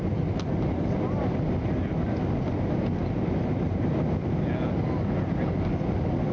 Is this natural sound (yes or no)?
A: yes